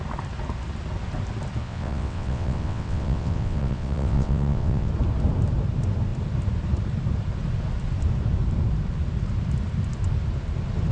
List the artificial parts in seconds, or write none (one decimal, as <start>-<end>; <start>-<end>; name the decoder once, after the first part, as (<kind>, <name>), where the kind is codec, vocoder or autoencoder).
1.6-4.9 (vocoder, WaveNeXt)

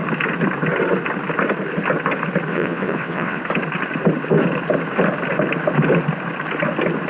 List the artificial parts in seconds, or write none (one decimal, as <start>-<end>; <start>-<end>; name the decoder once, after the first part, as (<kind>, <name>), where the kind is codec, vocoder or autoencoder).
2.5-3.4 (vocoder, WaveNeXt)

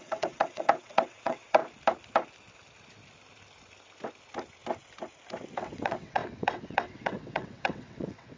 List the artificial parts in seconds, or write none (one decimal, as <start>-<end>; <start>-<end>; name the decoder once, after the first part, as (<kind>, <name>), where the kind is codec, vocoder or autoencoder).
0.0-1.6 (vocoder, WaveNeXt); 5.6-8.4

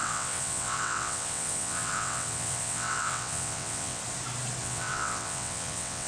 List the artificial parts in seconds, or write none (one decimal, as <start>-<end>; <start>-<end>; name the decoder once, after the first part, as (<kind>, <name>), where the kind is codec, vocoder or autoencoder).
0.0-4.0 (vocoder, WaveNeXt); 4.6-6.1

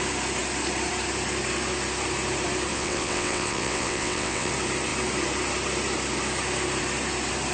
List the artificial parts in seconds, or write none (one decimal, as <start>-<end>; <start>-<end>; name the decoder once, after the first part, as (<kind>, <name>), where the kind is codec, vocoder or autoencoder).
2.7-4.5 (vocoder, WaveNeXt)

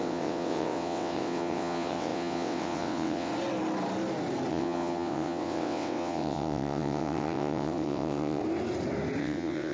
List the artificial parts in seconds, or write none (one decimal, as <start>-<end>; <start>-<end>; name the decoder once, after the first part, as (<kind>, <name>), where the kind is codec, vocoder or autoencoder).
0.0-3.3 (vocoder, WaveNeXt); 4.5-8.4; 9.2-9.7

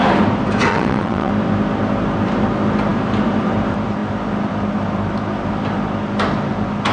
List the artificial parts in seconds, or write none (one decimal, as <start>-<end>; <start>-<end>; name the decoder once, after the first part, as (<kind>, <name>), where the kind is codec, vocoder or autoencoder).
0.7-1.3 (vocoder, WaveNeXt)

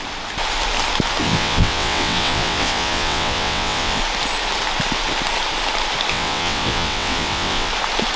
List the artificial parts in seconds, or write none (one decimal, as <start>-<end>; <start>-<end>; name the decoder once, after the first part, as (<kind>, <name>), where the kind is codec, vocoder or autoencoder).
1.2-4.0 (vocoder, WaveNeXt); 6.1-7.7